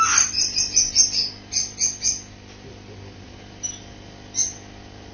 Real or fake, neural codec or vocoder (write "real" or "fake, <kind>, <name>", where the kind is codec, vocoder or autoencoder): real